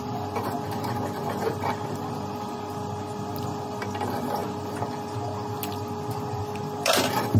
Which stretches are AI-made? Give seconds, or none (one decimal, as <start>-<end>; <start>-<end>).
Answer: none